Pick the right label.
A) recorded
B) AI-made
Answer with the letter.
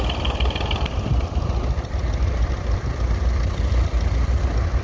A